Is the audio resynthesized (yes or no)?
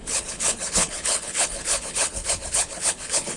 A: yes